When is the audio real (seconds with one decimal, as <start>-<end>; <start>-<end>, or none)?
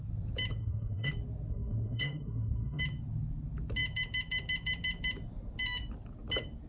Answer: 0.0-0.6; 1.1-1.5; 2.8-6.7